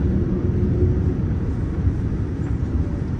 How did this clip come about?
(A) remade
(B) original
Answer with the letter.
B